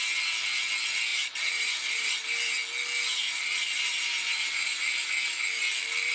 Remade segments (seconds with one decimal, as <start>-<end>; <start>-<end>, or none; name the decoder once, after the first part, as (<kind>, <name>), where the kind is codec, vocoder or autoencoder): 1.1-2.5 (vocoder, BigVGAN v2); 3.2-5.6